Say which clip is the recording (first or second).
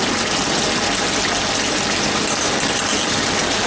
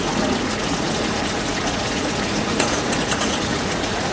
first